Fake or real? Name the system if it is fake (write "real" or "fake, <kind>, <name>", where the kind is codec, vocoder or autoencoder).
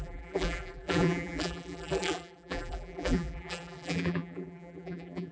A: fake, vocoder, BigVGAN v2